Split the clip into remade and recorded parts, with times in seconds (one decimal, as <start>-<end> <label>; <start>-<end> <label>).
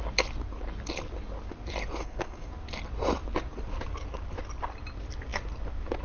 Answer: 0.0-2.0 recorded; 2.0-2.5 remade; 2.5-6.0 recorded